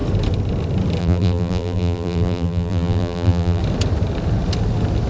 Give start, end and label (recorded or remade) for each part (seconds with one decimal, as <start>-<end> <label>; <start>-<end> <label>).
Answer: 0.0-1.0 recorded; 1.0-3.6 remade; 3.6-5.1 recorded